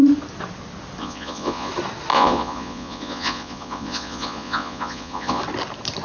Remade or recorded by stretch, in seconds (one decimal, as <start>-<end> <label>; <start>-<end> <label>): 0.0-1.0 recorded; 1.0-1.7 remade; 1.7-2.1 recorded; 2.1-5.4 remade; 5.4-6.0 recorded